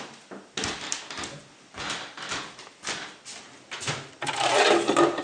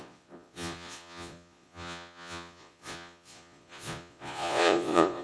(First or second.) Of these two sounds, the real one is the first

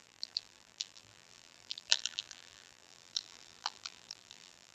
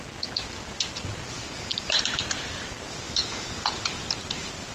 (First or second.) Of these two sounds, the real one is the second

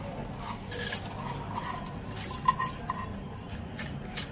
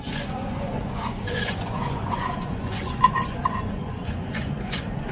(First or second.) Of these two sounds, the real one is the first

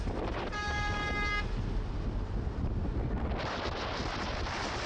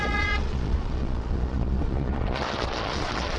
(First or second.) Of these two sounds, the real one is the first